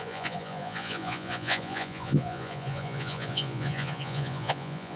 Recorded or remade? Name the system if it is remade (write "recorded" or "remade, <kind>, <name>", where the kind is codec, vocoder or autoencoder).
remade, vocoder, Vocos